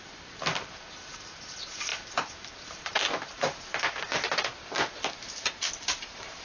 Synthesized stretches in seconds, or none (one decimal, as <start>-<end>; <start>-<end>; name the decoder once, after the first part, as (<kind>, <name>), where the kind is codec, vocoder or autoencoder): 0.0-6.4 (vocoder, BigVGAN v2)

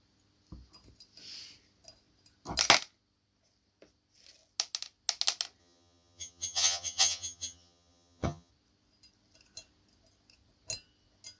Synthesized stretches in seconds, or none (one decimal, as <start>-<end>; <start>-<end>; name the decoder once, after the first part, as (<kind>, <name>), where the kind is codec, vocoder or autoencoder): 5.6-8.5 (vocoder, HiFi-GAN)

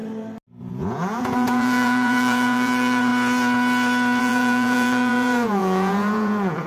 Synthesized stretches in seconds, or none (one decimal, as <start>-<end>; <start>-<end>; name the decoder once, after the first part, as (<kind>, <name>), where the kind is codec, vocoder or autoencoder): 0.6-3.1 (vocoder, Vocos); 4.2-6.7

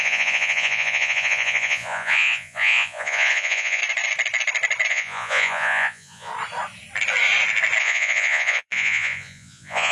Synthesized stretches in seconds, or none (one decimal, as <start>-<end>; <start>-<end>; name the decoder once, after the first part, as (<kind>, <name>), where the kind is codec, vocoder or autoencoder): 0.0-3.8 (vocoder, Vocos); 4.9-6.3; 7.8-9.9

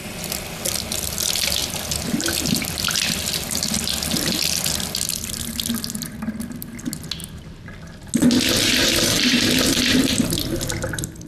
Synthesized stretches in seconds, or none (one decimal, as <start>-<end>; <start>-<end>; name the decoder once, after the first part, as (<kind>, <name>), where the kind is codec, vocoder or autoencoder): none

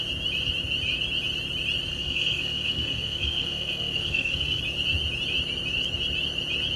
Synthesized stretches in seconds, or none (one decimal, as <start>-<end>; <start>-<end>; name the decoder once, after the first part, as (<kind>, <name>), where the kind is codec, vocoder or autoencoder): 1.9-4.6 (codec, SNAC)

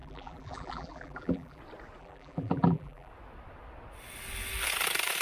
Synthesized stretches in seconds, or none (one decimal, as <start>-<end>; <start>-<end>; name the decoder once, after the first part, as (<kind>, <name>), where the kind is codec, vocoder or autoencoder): 0.0-1.6 (vocoder, BigVGAN v2); 2.0-3.1

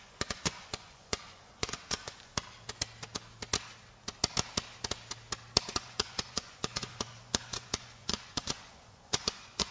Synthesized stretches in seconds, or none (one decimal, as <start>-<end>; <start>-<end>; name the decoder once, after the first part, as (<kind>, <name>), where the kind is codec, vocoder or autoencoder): 0.0-2.3 (vocoder, Vocos); 5.6-9.7